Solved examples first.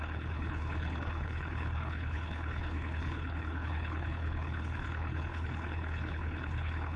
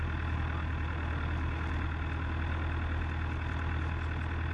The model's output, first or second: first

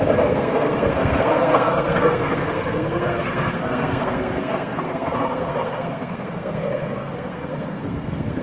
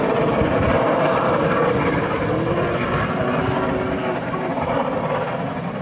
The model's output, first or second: first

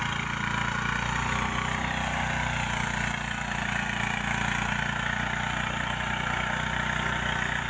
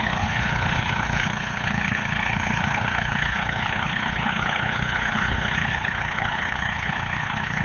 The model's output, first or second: second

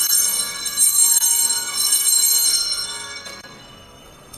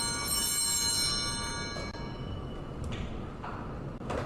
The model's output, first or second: first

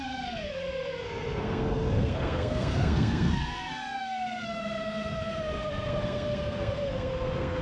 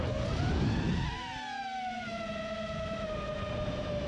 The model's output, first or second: first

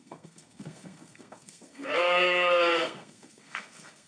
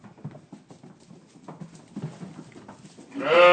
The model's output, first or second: first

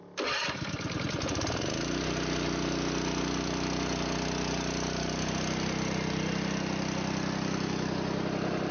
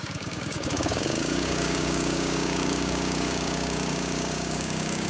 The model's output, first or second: second